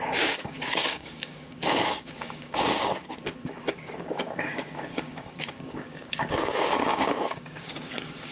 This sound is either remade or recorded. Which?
remade